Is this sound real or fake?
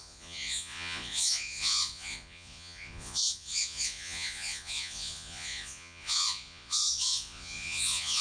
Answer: fake